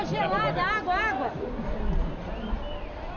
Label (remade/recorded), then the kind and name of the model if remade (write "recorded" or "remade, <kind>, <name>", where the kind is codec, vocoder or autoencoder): recorded